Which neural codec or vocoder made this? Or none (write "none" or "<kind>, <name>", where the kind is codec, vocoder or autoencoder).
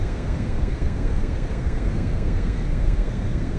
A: codec, SNAC